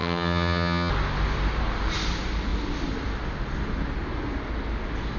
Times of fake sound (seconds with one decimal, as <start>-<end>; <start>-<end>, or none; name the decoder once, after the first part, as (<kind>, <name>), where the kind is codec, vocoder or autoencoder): 0.0-0.9 (vocoder, HiFi-GAN)